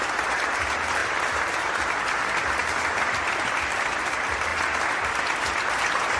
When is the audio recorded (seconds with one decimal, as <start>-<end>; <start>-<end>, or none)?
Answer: 4.5-5.2